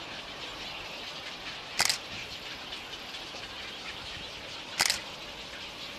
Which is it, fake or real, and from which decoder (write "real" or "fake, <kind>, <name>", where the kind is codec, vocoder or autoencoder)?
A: real